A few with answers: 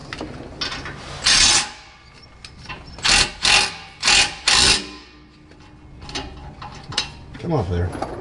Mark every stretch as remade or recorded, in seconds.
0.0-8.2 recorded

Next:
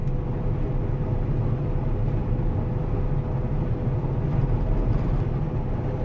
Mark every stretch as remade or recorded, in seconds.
0.0-6.0 recorded

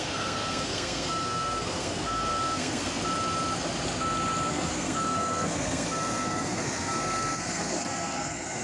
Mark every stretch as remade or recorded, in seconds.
0.0-3.0 remade; 3.0-4.5 recorded; 4.5-8.6 remade

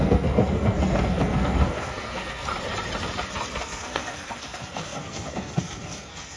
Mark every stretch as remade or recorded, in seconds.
0.0-2.5 remade; 2.5-3.6 recorded; 3.6-6.4 remade